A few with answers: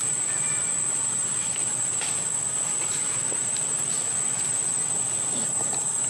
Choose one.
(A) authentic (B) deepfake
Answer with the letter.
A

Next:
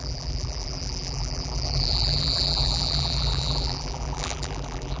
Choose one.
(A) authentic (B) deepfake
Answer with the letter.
B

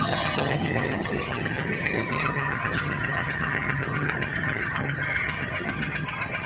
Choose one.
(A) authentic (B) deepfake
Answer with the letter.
B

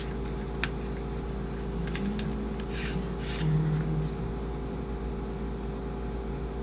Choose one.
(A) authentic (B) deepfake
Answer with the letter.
A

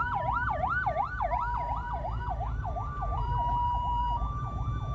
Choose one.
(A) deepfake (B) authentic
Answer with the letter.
A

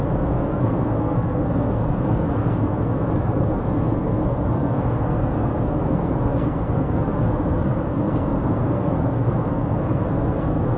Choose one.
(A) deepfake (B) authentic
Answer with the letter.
A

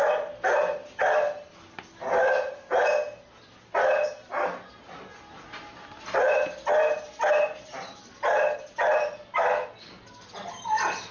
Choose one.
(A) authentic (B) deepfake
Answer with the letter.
A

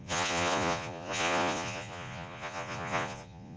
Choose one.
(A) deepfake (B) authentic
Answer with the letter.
A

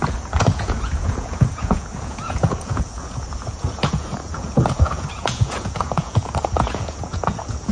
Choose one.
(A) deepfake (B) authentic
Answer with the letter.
A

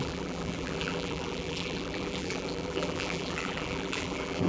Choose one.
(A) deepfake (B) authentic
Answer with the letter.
A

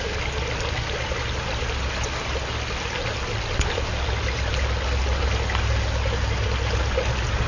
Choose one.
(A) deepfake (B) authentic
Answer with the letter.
B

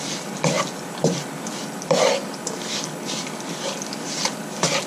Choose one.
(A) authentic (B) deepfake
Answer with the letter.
A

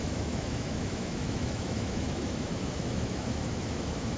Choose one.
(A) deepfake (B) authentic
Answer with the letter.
A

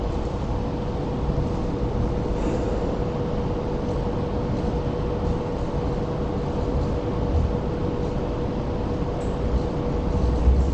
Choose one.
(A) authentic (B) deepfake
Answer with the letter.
A